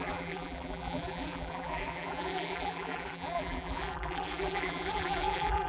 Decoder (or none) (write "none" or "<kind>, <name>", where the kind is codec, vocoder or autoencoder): vocoder, BigVGAN v2